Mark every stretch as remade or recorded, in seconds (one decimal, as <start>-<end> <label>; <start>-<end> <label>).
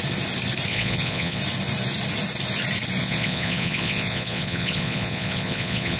0.0-0.7 recorded; 0.7-1.4 remade; 1.4-3.0 recorded; 3.0-6.0 remade